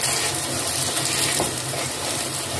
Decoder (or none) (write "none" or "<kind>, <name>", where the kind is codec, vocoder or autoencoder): none